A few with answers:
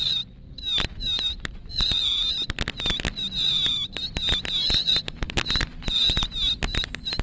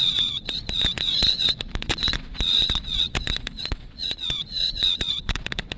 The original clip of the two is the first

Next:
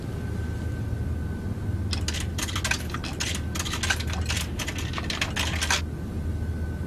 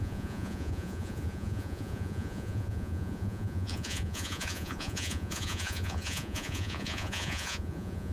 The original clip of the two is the first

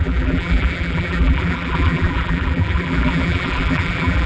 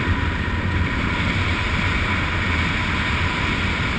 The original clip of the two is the second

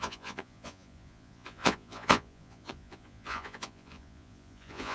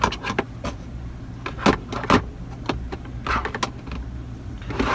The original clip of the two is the second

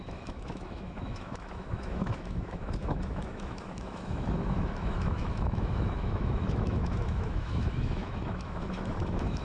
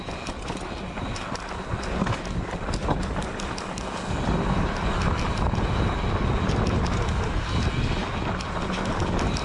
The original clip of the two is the second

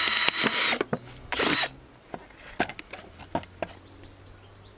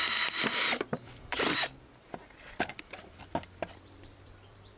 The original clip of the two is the first